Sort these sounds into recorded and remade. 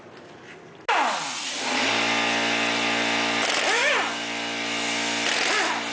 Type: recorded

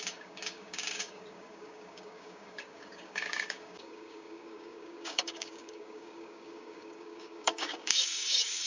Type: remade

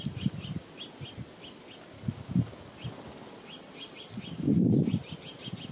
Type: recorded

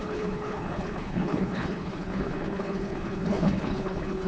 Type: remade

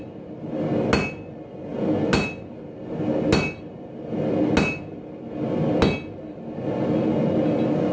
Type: recorded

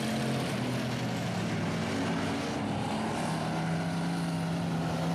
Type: recorded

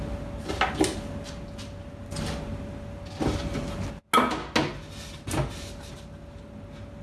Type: recorded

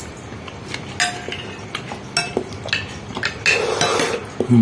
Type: recorded